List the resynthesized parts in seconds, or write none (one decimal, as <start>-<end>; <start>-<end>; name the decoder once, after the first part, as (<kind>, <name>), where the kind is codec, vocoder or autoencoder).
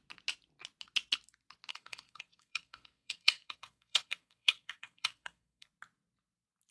1.7-5.7 (codec, SNAC)